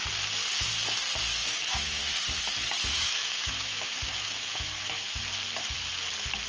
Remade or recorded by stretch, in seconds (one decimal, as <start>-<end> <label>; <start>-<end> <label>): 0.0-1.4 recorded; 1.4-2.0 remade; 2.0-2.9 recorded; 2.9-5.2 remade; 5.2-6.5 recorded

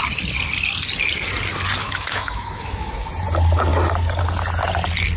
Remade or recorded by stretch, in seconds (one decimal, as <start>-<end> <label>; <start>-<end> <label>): 0.0-1.8 recorded; 1.8-3.1 remade; 3.1-5.2 recorded

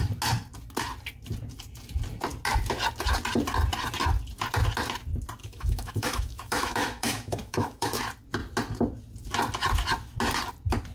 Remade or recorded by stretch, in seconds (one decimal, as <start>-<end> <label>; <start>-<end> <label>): 0.0-5.4 recorded; 5.4-8.0 remade; 8.0-10.9 recorded

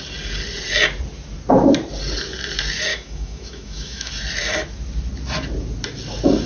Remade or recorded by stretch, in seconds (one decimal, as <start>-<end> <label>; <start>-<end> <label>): 0.0-2.9 recorded; 2.9-4.1 remade; 4.1-6.5 recorded

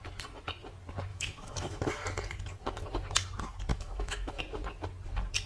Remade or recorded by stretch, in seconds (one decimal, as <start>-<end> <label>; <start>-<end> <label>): 0.0-1.1 recorded; 1.1-1.8 remade; 1.8-3.7 recorded; 3.7-4.4 remade; 4.4-5.5 recorded

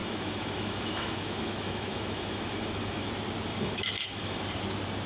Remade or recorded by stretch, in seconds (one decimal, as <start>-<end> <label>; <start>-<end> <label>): 0.0-3.1 remade; 3.1-3.5 recorded; 3.5-4.4 remade; 4.4-5.1 recorded

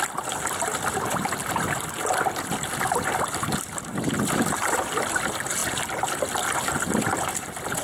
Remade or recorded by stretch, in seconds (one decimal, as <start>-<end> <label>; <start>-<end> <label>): 0.0-7.8 recorded